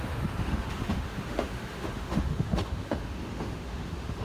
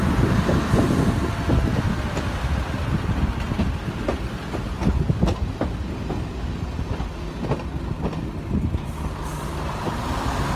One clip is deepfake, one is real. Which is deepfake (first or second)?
first